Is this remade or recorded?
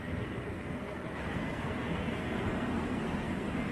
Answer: remade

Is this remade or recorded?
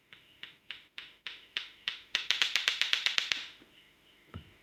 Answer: remade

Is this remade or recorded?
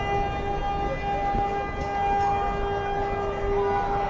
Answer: recorded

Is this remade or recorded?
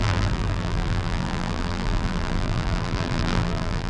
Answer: remade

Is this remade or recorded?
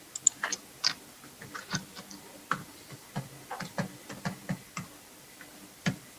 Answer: recorded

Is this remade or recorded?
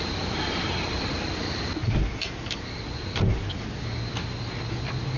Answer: recorded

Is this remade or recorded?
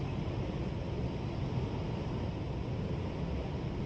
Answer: recorded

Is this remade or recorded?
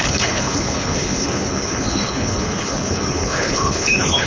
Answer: remade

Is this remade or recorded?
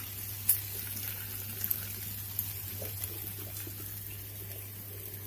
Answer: recorded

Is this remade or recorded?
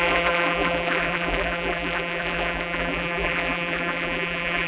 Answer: remade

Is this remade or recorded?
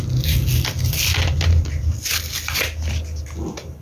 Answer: recorded